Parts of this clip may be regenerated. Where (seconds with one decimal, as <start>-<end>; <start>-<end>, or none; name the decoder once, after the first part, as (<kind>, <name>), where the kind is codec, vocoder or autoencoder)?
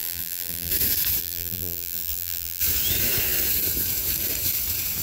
0.0-0.7 (vocoder, BigVGAN v2); 1.2-2.6